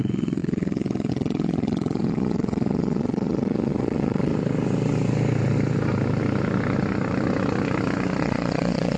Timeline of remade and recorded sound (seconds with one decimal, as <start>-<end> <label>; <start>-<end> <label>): 0.0-4.3 remade; 4.3-8.2 recorded; 8.2-9.0 remade